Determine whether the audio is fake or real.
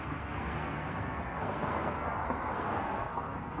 fake